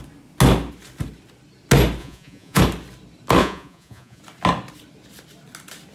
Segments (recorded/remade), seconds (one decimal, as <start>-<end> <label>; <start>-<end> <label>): 0.0-2.0 recorded; 2.0-2.6 remade; 2.6-3.4 recorded; 3.4-4.2 remade; 4.2-5.9 recorded